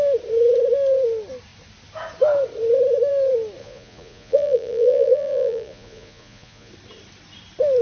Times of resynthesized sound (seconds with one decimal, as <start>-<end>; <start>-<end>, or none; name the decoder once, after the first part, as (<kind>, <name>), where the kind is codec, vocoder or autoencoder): 3.6-6.7 (vocoder, Vocos)